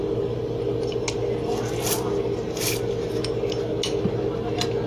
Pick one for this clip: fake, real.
real